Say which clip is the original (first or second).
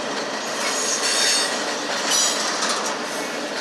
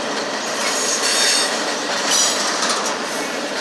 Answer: first